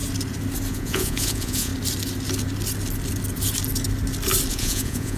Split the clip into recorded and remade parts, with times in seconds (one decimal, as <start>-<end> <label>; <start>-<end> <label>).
0.0-0.7 recorded; 0.7-1.7 remade; 1.7-4.5 recorded; 4.5-5.2 remade